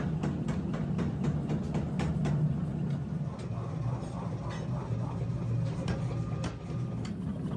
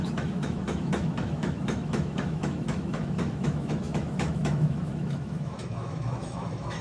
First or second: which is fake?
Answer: second